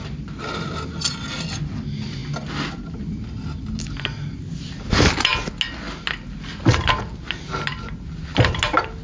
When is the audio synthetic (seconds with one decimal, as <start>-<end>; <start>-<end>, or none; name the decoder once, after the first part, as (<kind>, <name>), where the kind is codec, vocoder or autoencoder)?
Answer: none